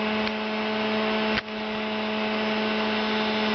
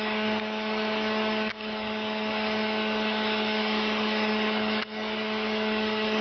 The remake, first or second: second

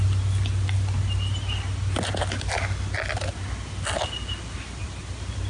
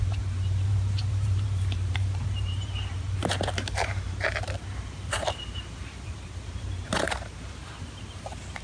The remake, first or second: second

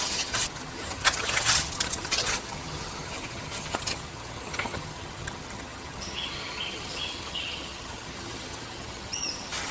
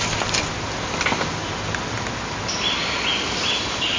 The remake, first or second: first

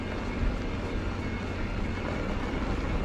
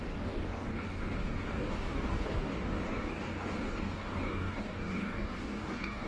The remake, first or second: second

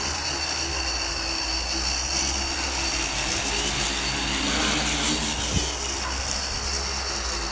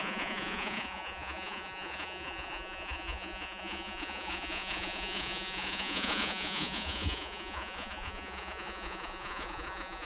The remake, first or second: second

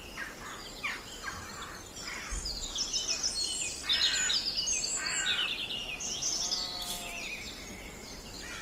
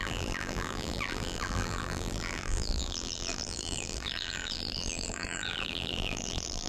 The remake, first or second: second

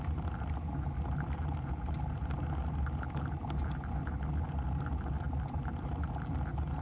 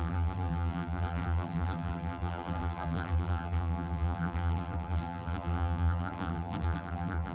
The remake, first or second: second